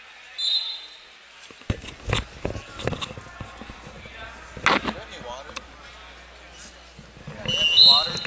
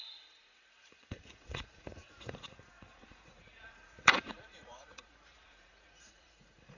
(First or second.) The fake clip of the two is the second